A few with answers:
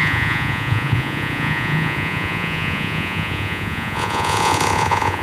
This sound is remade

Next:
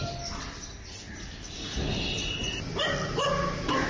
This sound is recorded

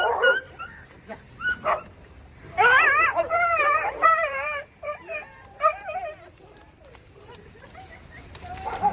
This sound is remade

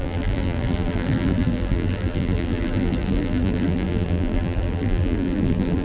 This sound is remade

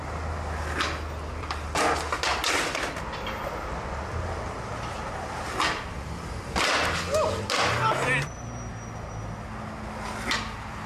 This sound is recorded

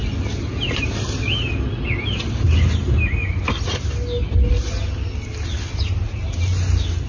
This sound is recorded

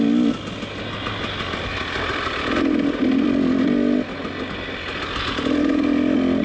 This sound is recorded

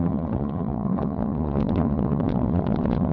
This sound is remade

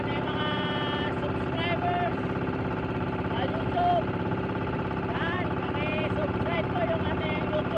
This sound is remade